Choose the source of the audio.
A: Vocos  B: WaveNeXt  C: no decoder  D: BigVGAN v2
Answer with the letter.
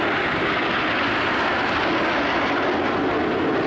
C